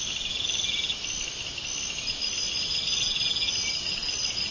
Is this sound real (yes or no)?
yes